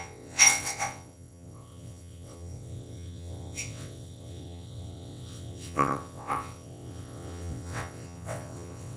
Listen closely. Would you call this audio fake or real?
fake